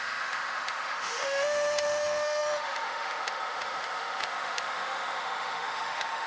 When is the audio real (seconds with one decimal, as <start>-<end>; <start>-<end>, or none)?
none